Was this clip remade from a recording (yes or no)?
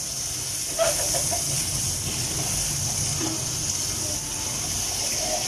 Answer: no